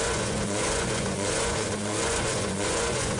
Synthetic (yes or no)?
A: yes